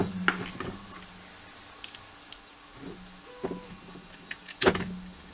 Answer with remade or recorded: recorded